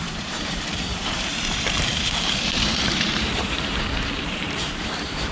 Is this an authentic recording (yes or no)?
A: no